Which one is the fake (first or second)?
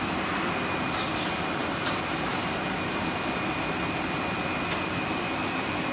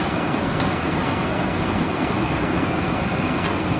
second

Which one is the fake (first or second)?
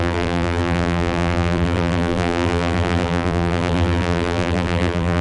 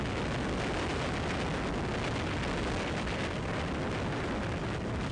first